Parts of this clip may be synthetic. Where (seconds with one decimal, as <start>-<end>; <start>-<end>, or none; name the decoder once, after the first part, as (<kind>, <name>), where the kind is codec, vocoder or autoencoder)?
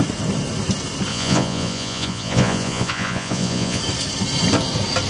1.1-3.8 (vocoder, Vocos)